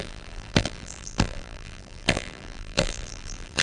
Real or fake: fake